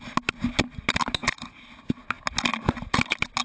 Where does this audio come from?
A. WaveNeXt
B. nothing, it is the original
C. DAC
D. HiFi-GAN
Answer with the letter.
B